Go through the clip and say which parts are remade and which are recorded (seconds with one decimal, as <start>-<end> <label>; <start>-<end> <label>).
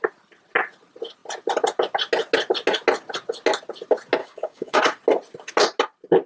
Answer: 0.0-4.2 recorded; 4.2-4.8 remade; 4.8-6.3 recorded